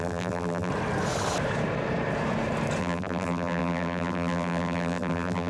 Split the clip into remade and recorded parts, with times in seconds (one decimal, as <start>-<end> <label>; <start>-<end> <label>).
0.0-0.7 remade; 0.7-2.8 recorded; 2.8-5.5 remade